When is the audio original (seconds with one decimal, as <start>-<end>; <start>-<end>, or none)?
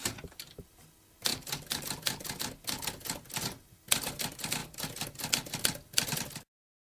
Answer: 0.0-1.3; 2.4-6.8